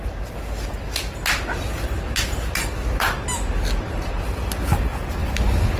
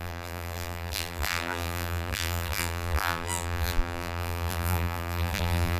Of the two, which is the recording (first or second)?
first